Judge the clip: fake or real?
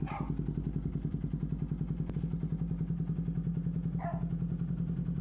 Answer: real